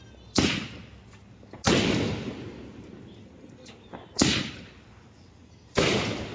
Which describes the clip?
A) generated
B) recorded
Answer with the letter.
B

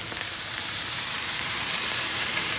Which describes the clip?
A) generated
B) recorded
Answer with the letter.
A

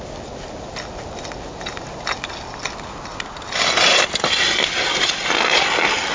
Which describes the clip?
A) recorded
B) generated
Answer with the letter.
A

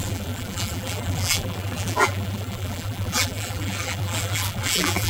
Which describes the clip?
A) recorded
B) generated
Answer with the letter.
B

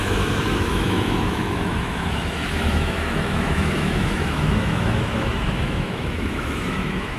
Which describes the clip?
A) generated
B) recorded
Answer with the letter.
A